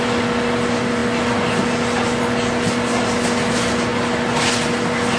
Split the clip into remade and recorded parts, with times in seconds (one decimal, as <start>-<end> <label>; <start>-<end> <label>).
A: 0.0-5.2 recorded